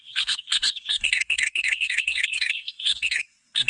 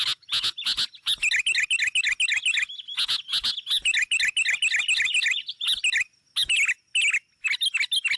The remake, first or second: first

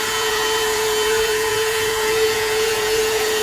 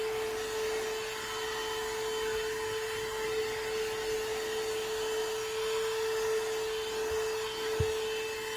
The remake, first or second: first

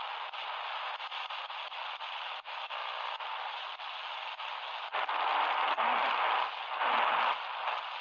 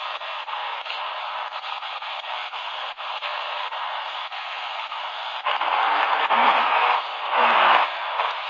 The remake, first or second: second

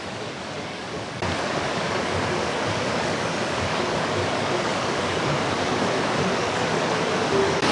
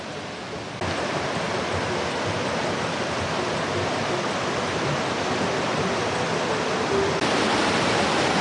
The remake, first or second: first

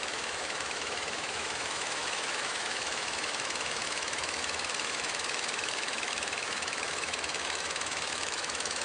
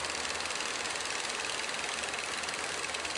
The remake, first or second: first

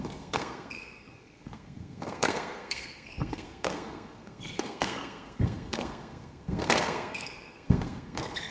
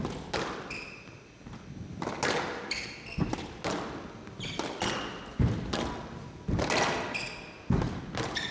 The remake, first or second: first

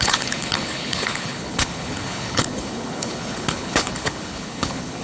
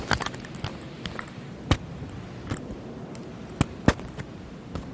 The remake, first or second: first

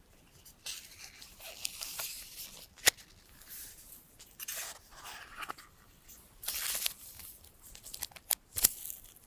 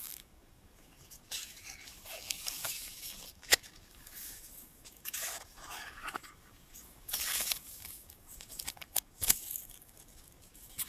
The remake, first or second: second